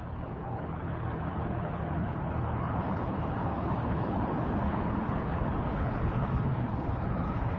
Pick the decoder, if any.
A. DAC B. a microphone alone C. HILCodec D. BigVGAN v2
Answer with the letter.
C